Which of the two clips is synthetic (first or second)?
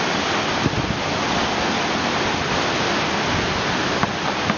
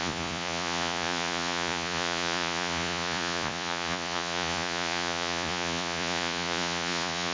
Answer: second